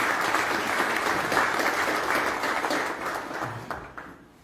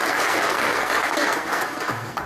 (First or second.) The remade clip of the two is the second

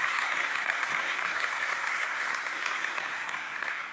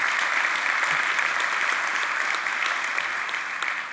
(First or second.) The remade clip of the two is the first